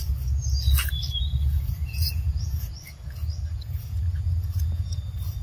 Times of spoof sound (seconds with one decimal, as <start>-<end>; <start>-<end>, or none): 1.5-2.7; 3.5-5.0